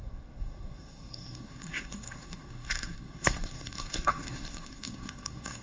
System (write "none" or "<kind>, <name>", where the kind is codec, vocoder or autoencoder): codec, SNAC